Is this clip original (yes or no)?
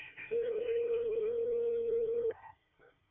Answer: no